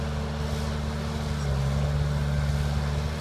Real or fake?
real